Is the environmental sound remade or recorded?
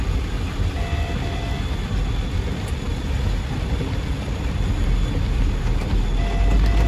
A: recorded